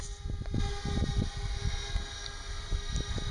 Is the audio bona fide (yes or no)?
yes